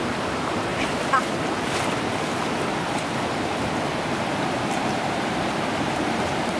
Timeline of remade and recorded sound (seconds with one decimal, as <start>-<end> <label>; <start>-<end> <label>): 0.0-0.7 remade; 0.7-4.7 recorded; 4.7-6.6 remade

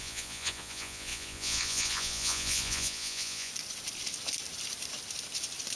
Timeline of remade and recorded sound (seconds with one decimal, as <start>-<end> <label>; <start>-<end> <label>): 0.0-3.5 remade; 3.5-5.8 recorded